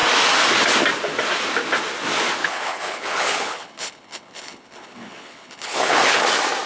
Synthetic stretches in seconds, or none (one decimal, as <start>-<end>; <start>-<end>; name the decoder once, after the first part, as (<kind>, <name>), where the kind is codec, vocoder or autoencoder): 2.4-6.2 (codec, HILCodec)